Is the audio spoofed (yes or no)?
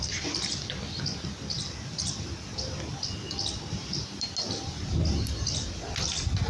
no